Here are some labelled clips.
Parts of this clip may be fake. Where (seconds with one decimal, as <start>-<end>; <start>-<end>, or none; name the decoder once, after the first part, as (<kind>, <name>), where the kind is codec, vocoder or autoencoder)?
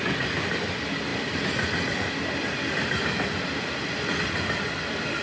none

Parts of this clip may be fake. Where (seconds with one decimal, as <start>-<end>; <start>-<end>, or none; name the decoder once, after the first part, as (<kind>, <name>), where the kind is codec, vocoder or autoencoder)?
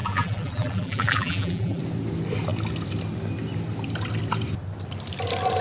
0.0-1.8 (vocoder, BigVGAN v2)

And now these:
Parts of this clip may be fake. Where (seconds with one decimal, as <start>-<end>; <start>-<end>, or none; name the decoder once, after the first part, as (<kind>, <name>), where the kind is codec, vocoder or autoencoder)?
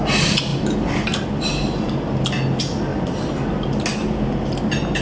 none